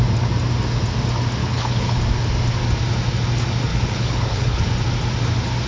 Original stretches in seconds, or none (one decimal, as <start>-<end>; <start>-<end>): 0.0-1.4; 2.0-3.7; 4.7-5.7